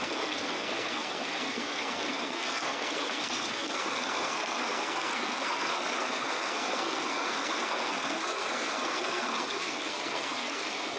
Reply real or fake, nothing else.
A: fake